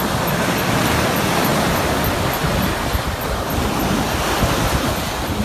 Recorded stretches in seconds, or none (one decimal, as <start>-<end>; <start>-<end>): 0.0-5.4